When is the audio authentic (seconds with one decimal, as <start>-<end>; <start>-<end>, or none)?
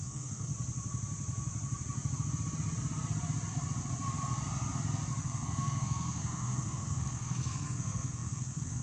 0.5-5.2